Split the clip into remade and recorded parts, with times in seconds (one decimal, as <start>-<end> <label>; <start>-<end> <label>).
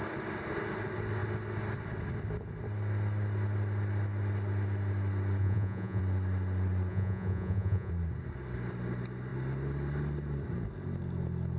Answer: 0.0-5.4 recorded; 5.4-6.0 remade; 6.0-6.9 recorded; 6.9-7.9 remade; 7.9-11.6 recorded